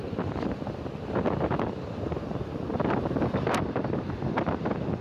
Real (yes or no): yes